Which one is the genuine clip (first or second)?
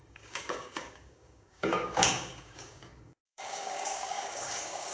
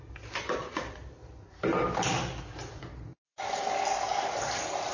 second